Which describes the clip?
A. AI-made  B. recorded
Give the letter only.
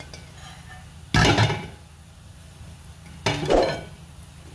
B